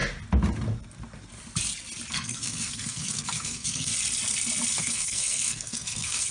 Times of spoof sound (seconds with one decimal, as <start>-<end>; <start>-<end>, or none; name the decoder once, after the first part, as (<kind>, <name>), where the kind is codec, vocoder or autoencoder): 2.1-3.9 (codec, SNAC); 4.7-6.3